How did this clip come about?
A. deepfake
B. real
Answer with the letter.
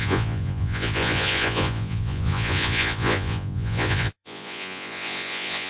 A